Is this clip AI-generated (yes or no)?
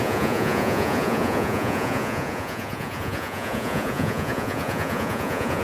yes